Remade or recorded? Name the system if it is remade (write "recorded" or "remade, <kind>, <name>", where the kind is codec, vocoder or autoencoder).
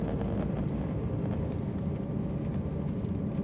recorded